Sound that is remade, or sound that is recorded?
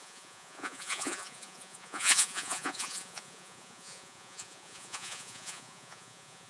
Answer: remade